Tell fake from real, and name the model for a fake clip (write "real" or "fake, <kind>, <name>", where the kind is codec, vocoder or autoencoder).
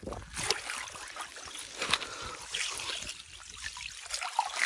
real